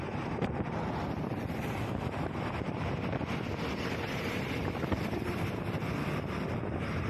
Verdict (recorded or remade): remade